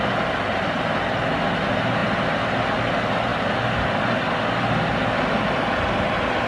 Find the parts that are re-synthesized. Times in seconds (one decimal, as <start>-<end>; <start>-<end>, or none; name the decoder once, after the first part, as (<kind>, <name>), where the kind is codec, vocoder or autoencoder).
none